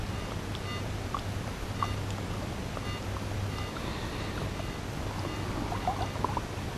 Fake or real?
real